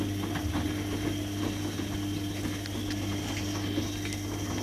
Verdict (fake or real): real